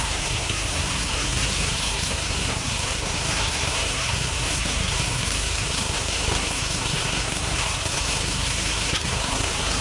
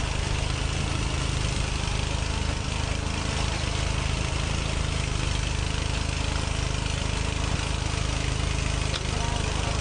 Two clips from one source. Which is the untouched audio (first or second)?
second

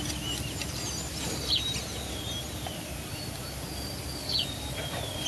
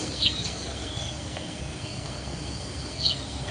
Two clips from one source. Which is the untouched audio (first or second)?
first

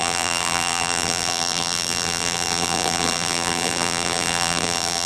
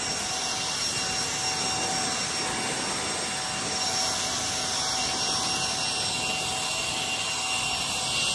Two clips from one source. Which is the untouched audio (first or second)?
second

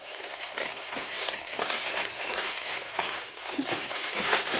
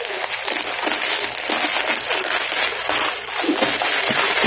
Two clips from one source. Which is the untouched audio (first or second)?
second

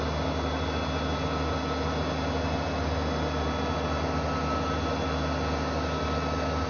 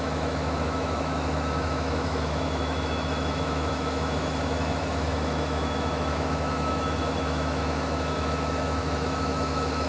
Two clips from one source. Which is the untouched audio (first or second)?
first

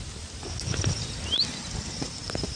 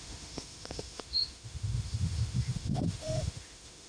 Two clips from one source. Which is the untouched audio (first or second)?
first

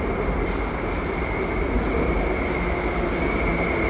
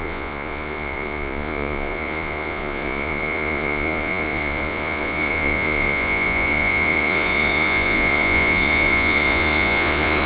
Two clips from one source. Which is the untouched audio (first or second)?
first